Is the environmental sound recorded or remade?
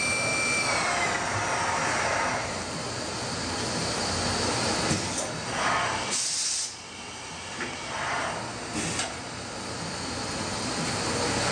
recorded